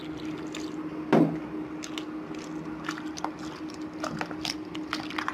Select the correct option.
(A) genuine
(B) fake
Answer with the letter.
A